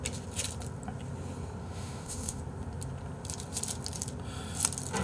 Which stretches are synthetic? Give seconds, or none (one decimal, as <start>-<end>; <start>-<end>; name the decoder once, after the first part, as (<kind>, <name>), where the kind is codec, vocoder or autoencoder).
1.6-2.4 (autoencoder, DAC-VAE)